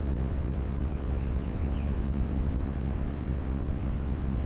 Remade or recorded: remade